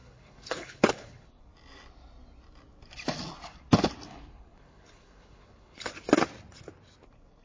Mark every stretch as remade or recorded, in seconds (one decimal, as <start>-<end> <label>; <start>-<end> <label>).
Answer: 0.0-1.4 remade; 1.4-4.1 recorded; 4.1-5.9 remade; 5.9-7.4 recorded

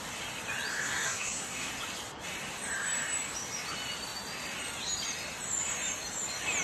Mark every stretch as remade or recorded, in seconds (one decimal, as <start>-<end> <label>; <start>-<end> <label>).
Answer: 0.0-0.7 recorded; 0.7-1.7 remade; 1.7-6.6 recorded

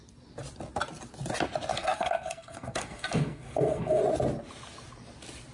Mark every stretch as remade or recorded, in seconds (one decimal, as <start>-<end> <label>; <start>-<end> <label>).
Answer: 0.0-1.7 recorded; 1.7-4.0 remade; 4.0-5.5 recorded

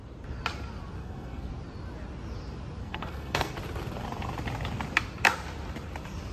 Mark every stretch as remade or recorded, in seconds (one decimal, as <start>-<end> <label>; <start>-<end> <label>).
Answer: 0.0-1.0 recorded; 1.0-1.5 remade; 1.5-2.8 recorded; 2.8-3.5 remade; 3.5-6.3 recorded

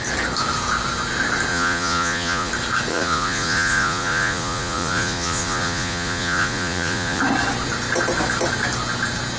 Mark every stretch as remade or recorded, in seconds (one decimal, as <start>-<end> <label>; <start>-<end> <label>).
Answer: 0.0-1.5 recorded; 1.5-2.5 remade; 2.5-2.9 recorded; 2.9-7.2 remade; 7.2-9.4 recorded

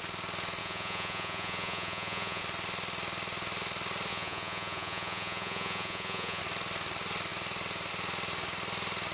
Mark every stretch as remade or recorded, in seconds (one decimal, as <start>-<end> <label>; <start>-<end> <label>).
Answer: 0.0-0.6 recorded; 0.6-2.4 remade; 2.4-4.1 recorded; 4.1-6.4 remade; 6.4-9.1 recorded